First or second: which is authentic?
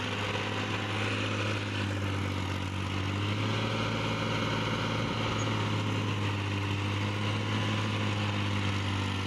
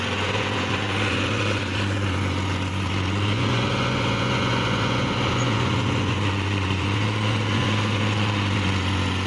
first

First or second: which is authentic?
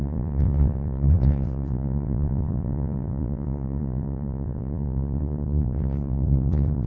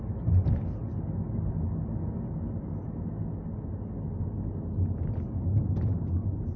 second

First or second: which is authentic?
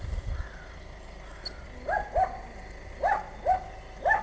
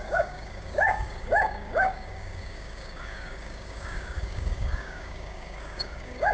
first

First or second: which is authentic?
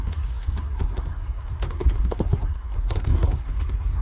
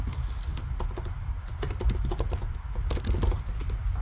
second